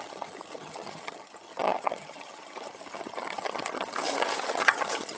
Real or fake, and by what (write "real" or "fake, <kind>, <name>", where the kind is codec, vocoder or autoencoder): fake, vocoder, HiFi-GAN